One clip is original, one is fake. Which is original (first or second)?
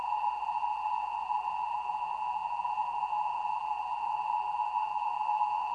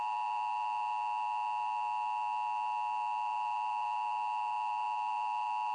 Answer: second